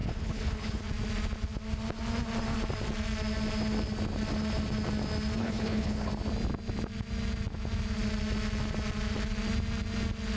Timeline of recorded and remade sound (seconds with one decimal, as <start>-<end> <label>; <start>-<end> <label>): 0.0-0.8 remade; 0.8-5.4 recorded; 5.4-6.1 remade; 6.1-10.4 recorded